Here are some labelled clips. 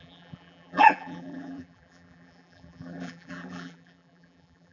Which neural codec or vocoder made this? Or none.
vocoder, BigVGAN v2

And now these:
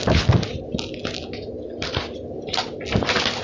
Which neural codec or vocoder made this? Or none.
none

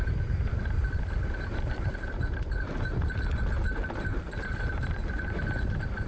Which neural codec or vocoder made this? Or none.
none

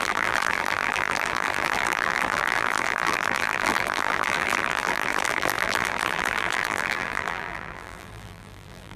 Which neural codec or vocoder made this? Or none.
vocoder, BigVGAN v2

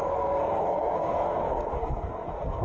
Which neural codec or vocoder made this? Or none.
codec, SNAC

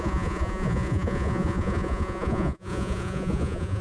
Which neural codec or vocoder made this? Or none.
vocoder, Vocos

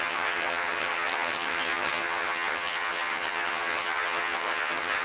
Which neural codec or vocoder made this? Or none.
vocoder, HiFi-GAN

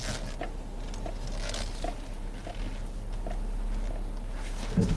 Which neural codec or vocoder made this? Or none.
none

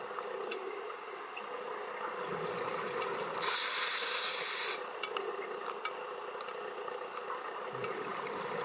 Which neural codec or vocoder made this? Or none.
none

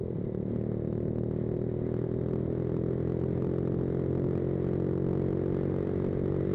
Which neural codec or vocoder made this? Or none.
none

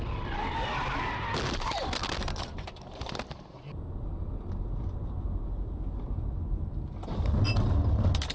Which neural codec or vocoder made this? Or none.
none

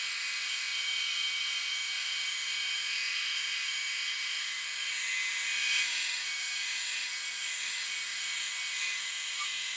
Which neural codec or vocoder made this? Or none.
autoencoder, DAC-VAE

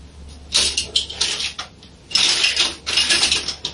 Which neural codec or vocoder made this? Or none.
none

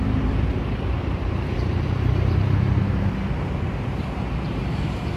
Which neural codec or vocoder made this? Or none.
vocoder, BigVGAN v2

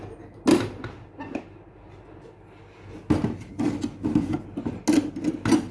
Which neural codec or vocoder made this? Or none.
none